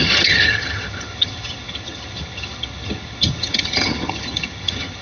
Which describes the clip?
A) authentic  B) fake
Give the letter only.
B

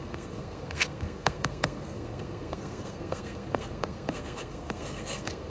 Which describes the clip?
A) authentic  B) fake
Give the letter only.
B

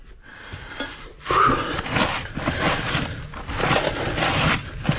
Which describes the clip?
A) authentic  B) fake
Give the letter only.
A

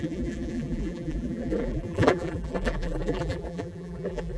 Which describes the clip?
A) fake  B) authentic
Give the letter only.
A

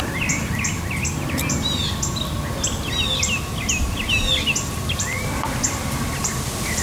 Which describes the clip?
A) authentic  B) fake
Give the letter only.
A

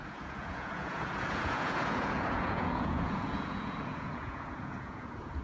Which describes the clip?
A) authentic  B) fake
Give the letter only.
B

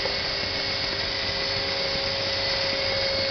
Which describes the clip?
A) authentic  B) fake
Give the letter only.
A